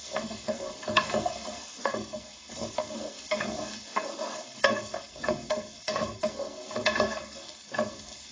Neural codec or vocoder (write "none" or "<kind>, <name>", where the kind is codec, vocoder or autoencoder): codec, SNAC